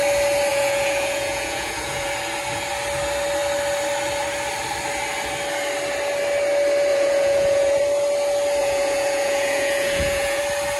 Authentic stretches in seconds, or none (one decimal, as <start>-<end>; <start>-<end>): 0.0-0.5; 2.1-6.9; 7.8-8.6; 10.4-10.8